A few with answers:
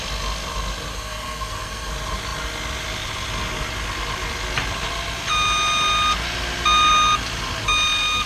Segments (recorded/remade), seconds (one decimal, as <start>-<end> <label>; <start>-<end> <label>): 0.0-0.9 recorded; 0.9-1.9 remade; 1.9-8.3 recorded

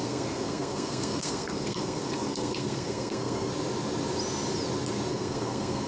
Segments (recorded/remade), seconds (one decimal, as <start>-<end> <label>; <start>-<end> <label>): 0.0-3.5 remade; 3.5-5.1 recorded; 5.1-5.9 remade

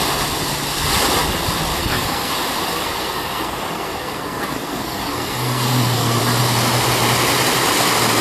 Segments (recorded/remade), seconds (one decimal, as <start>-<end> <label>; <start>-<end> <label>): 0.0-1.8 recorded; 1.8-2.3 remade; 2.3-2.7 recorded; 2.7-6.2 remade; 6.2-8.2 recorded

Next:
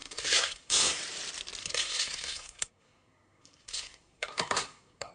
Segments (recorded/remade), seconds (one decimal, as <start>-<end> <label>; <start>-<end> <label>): 0.0-1.0 remade; 1.0-1.6 recorded; 1.6-5.1 remade